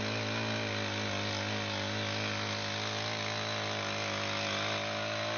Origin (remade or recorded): recorded